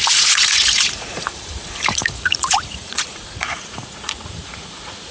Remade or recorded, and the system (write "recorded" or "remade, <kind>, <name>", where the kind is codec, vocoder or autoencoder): remade, vocoder, Vocos